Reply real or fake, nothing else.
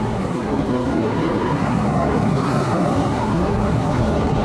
fake